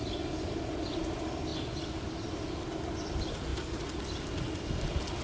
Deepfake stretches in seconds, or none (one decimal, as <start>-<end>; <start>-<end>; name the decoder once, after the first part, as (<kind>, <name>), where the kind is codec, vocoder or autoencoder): none